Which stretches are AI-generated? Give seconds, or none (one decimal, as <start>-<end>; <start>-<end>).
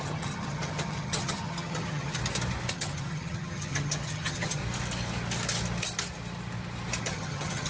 0.0-2.2; 2.7-4.6; 7.0-7.7